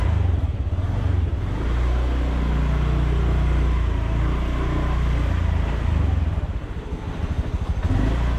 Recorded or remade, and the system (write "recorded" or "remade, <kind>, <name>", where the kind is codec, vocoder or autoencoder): recorded